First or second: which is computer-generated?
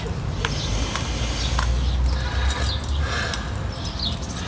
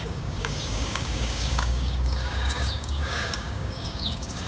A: second